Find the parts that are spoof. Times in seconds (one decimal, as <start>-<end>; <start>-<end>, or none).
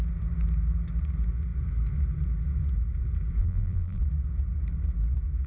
3.4-4.0